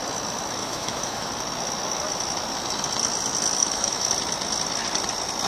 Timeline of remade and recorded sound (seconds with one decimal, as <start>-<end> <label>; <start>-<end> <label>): 0.0-0.6 recorded; 0.6-1.3 remade; 1.3-3.6 recorded; 3.6-4.1 remade; 4.1-5.5 recorded